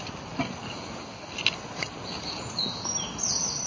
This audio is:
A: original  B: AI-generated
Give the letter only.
A